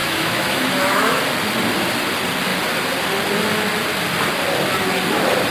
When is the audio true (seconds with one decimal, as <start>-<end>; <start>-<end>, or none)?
1.2-5.5